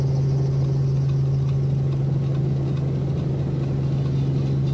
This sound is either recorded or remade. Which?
recorded